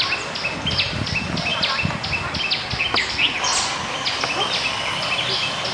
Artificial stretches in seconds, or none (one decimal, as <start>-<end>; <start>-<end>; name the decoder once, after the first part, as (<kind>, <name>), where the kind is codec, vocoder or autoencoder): none